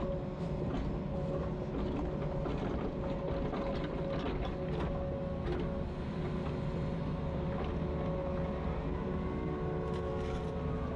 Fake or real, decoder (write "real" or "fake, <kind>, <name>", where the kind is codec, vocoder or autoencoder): real